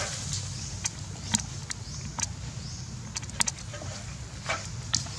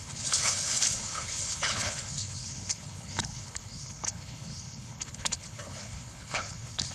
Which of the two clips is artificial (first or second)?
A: second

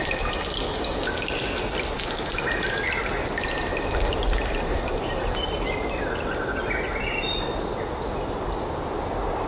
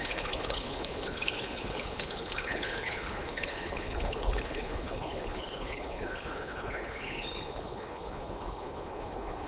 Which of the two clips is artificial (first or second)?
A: second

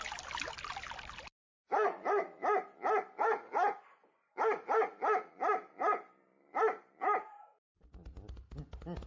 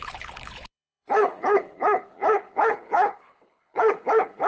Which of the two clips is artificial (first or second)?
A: second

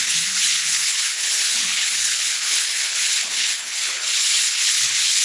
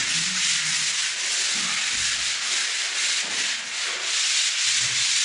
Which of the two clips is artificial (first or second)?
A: first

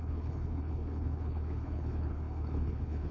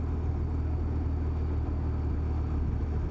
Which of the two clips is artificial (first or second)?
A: first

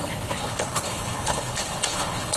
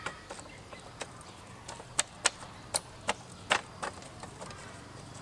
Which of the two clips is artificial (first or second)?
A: first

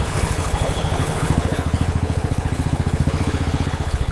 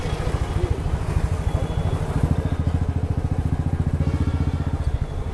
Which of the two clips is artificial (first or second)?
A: first